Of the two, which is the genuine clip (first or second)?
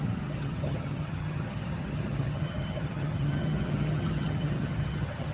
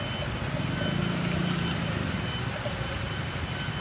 second